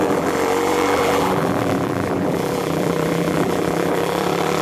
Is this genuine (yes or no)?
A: no